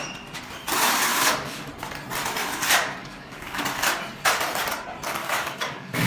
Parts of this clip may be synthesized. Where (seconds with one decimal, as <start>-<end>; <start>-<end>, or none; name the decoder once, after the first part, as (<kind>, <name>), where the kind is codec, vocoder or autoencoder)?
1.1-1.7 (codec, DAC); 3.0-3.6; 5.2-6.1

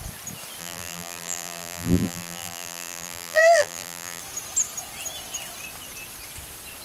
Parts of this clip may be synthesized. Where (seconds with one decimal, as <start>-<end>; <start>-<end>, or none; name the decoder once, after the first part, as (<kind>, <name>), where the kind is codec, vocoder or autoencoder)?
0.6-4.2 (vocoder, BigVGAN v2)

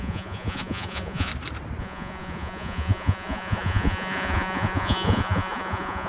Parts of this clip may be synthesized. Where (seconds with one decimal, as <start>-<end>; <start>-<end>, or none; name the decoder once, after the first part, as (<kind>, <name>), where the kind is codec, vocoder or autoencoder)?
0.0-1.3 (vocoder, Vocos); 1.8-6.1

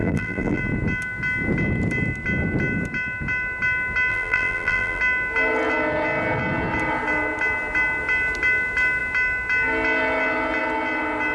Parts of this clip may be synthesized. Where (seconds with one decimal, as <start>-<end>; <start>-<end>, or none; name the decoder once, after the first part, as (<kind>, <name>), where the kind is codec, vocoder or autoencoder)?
0.0-0.6 (vocoder, BigVGAN v2); 4.1-5.0